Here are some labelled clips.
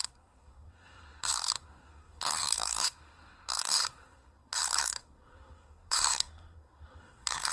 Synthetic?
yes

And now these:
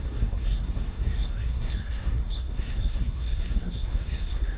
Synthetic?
yes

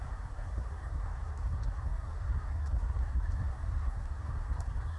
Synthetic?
yes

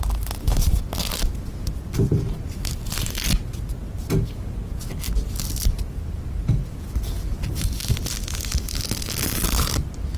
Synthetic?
no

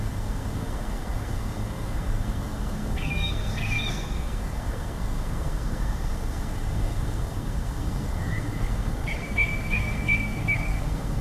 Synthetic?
yes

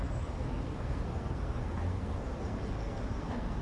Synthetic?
yes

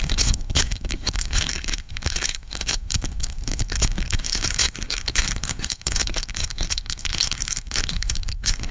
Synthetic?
yes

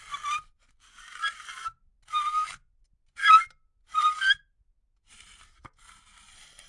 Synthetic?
no